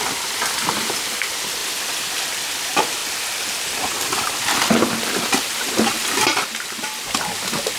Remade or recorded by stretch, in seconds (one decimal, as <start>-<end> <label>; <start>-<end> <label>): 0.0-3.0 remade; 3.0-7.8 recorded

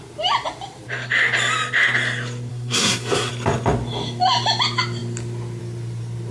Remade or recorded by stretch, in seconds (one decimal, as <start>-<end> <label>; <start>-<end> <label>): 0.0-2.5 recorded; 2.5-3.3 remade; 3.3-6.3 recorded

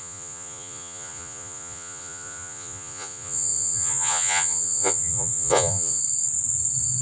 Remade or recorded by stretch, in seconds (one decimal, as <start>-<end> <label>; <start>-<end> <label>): 0.0-6.0 remade; 6.0-7.0 recorded

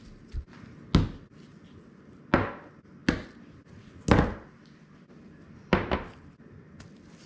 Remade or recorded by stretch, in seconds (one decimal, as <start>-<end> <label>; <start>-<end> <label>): 0.0-7.3 recorded